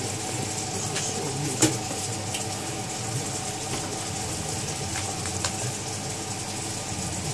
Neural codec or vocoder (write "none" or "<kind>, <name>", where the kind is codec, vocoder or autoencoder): none